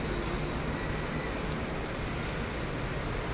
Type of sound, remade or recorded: recorded